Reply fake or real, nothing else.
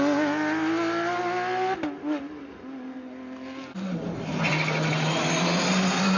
real